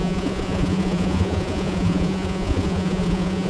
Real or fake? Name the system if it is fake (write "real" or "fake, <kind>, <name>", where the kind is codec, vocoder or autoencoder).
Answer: fake, vocoder, Vocos